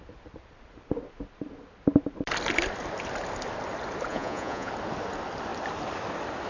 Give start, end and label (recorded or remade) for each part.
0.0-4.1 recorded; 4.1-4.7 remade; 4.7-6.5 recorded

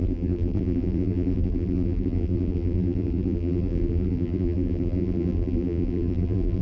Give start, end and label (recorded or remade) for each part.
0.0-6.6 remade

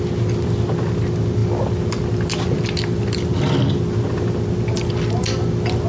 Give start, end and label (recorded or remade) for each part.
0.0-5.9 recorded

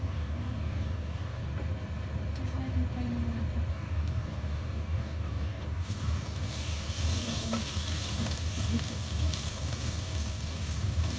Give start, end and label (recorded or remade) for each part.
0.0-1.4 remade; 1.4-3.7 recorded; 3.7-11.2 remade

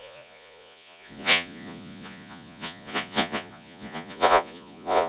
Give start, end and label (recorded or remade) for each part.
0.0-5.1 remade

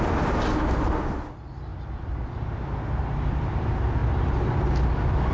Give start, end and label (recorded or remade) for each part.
0.0-1.7 recorded; 1.7-2.3 remade; 2.3-5.3 recorded

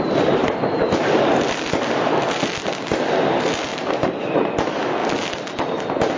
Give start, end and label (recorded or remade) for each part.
0.0-0.4 recorded; 0.4-1.1 remade; 1.1-3.7 recorded; 3.7-4.4 remade; 4.4-6.2 recorded